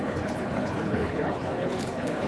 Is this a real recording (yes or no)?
no